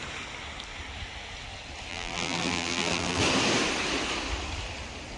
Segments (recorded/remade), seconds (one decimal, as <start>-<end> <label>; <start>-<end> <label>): 0.0-1.9 recorded; 1.9-3.2 remade; 3.2-5.2 recorded